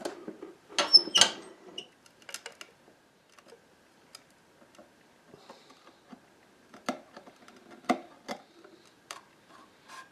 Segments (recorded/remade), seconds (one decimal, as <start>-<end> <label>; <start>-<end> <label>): 0.0-10.1 recorded